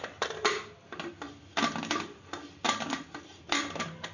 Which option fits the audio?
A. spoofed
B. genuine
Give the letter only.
B